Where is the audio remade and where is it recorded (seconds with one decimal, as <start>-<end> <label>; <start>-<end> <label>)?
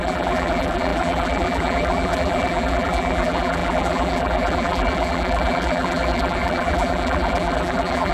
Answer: 0.0-8.1 remade